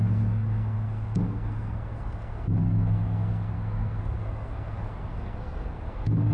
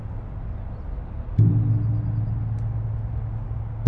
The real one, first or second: second